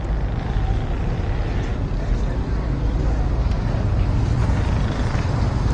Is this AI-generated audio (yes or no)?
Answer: no